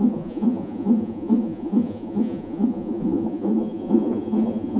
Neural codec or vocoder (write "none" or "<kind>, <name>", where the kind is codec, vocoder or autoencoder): vocoder, Vocos